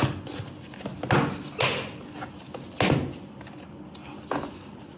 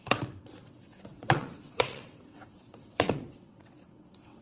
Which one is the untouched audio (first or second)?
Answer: first